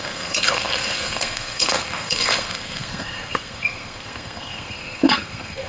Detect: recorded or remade remade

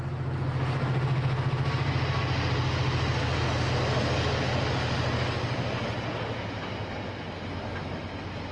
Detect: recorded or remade recorded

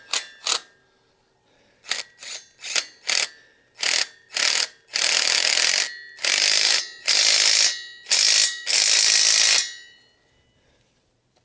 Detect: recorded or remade recorded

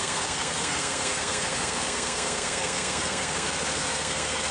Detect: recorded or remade remade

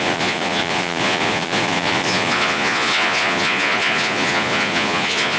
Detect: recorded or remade remade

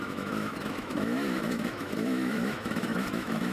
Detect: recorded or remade remade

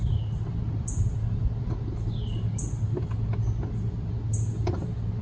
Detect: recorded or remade recorded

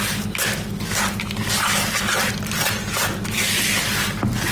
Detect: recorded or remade recorded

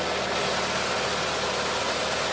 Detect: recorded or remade recorded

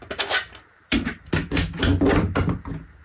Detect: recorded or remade recorded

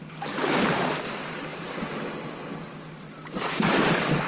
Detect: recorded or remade recorded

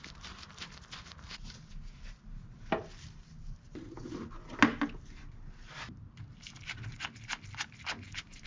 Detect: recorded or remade recorded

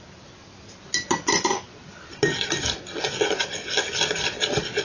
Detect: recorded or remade recorded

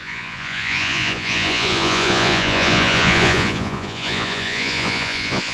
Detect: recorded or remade remade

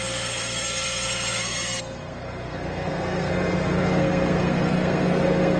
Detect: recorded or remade remade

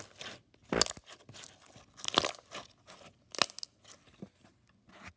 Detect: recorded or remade recorded